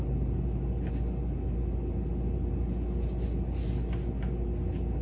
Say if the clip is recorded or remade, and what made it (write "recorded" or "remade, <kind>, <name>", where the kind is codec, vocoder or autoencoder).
recorded